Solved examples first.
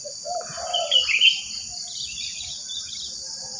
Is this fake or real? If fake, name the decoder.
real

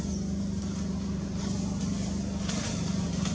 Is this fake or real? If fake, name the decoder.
real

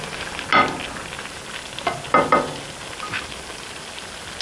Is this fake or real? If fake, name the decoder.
real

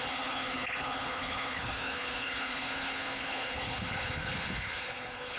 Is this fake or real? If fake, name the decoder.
fake, codec, HILCodec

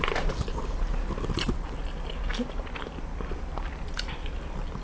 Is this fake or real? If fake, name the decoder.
real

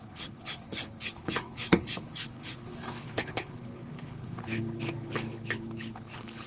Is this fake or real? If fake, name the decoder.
fake, codec, HILCodec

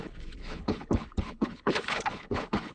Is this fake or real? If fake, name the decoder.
fake, codec, HILCodec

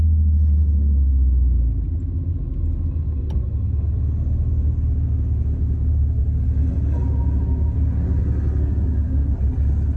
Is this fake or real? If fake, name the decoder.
real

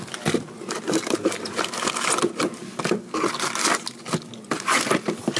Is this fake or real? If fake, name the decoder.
real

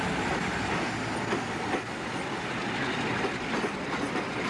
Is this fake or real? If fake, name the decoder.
real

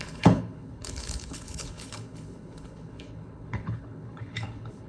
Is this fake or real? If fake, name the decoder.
fake, codec, HILCodec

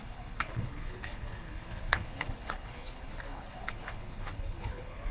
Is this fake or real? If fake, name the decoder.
fake, codec, HILCodec